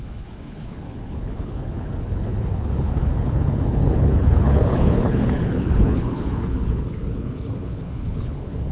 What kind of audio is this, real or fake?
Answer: fake